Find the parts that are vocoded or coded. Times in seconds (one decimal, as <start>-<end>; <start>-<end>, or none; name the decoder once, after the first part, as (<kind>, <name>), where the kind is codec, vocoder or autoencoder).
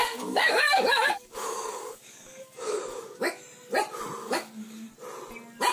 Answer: 0.0-3.4 (codec, DAC); 4.2-4.9